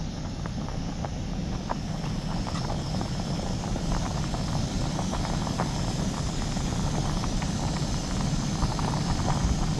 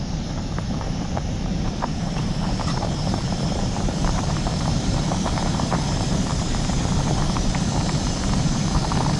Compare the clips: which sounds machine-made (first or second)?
second